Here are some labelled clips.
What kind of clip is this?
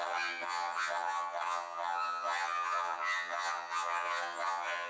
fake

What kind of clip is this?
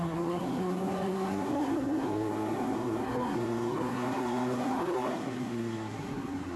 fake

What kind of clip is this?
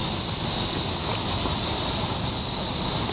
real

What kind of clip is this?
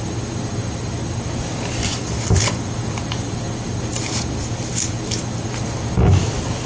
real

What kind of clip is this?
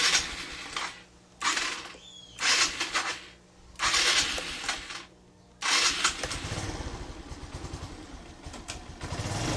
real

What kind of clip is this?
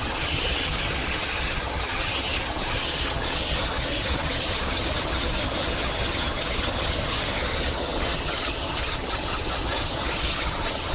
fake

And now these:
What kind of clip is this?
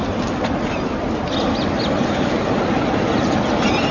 real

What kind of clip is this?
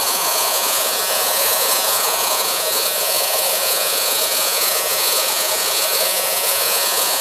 fake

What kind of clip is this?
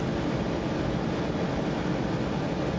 real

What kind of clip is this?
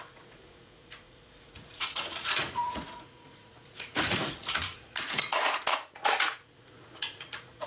fake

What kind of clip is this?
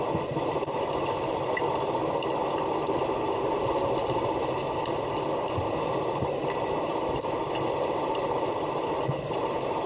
real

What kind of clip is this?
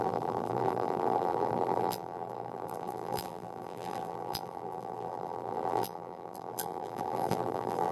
fake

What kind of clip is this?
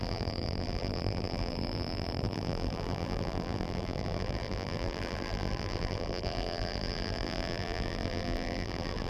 fake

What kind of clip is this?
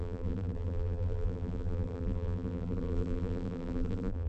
fake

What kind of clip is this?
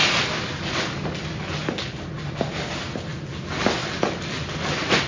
real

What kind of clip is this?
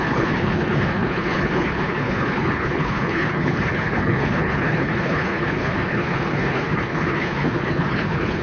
fake